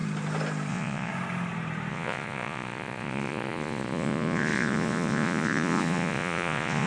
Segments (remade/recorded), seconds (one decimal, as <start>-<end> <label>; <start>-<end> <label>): 0.0-0.7 recorded; 0.7-1.1 remade; 1.1-1.9 recorded; 1.9-6.9 remade